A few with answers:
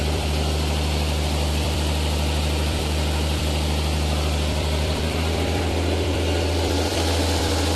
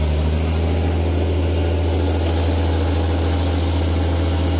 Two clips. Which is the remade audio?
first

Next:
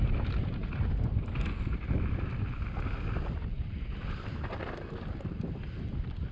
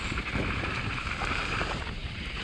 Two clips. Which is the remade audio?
second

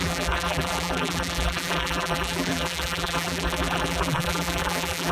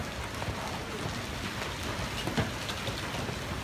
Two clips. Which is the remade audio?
first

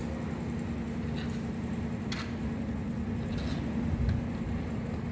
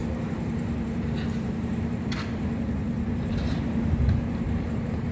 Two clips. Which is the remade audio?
second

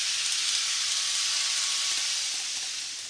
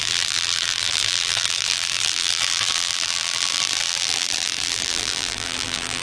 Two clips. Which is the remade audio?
second